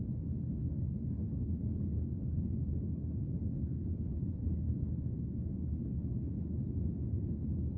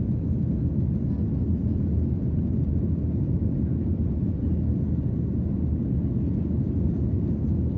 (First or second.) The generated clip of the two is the first